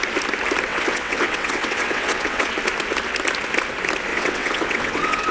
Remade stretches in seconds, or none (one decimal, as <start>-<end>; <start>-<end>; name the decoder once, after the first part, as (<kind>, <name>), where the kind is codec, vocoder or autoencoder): 0.7-2.5 (vocoder, WaveNeXt); 4.1-5.3